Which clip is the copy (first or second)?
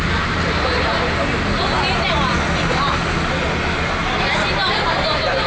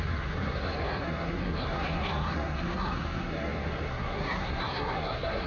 second